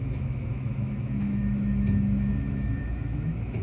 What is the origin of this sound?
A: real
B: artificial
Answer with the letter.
B